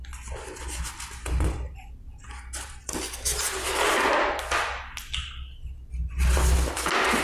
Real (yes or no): yes